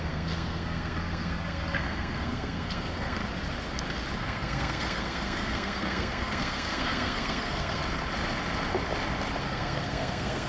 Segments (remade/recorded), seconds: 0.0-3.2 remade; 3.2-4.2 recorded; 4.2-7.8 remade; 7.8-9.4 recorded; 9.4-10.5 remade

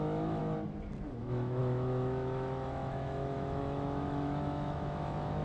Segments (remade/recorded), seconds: 0.0-0.4 remade; 0.4-1.2 recorded; 1.2-5.4 remade